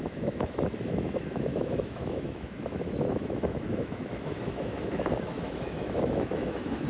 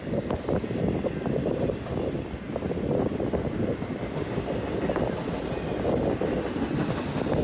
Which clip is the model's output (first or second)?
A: first